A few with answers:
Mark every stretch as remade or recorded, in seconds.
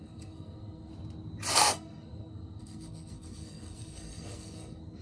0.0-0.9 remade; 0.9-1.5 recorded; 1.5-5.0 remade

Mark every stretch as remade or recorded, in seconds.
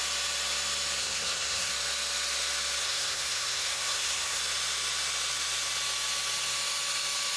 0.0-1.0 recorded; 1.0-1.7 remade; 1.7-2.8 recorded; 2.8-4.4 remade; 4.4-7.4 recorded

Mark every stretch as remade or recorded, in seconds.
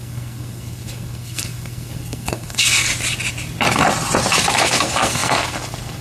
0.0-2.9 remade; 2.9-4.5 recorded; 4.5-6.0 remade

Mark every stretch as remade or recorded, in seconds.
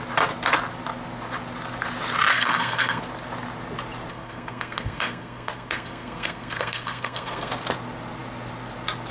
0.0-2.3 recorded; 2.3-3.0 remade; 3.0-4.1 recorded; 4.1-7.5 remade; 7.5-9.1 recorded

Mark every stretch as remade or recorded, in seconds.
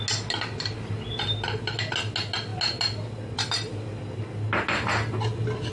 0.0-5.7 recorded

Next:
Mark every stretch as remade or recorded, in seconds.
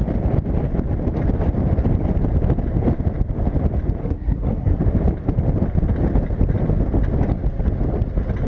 0.0-4.0 recorded; 4.0-4.8 remade; 4.8-8.5 recorded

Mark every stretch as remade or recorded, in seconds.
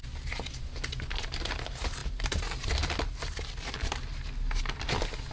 0.0-5.3 recorded